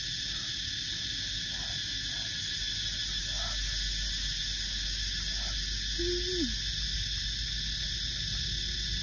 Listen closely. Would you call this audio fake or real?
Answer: real